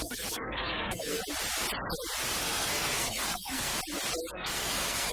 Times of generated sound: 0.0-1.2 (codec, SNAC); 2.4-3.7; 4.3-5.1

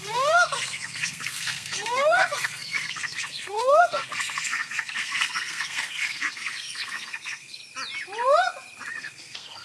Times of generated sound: 0.0-7.6 (codec, SNAC); 8.9-9.6

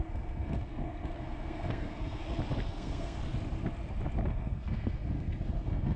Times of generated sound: 0.0-2.2 (codec, SNAC); 2.7-3.2; 4.3-6.0